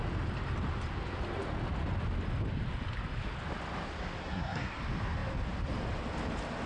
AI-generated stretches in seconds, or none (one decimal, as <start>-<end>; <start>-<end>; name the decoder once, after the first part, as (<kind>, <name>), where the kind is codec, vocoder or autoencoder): 4.2-4.8 (codec, SNAC)